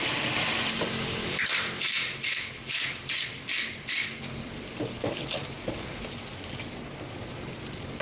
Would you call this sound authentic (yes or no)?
no